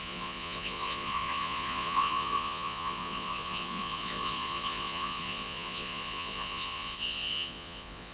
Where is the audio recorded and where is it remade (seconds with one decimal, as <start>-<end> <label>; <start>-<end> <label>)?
0.0-8.1 remade